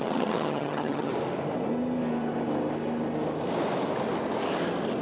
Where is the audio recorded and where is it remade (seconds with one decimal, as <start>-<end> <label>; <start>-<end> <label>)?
0.0-1.1 remade; 1.1-5.0 recorded